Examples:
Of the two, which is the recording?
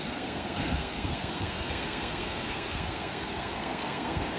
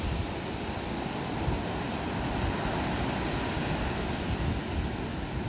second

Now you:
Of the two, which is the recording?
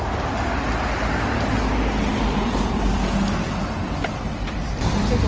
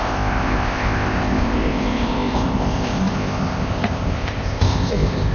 first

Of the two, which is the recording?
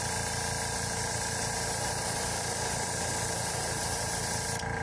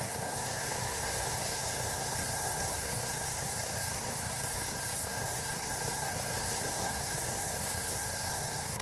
first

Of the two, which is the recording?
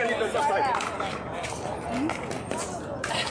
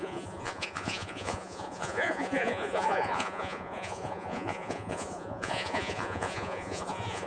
first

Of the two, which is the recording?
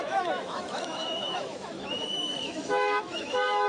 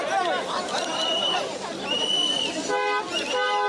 second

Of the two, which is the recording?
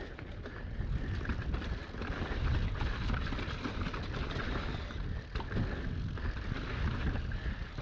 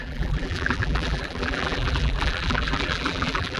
first